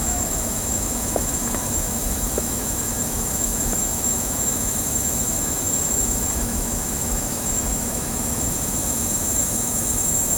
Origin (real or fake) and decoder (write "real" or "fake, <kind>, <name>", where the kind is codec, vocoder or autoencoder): fake, autoencoder, DAC-VAE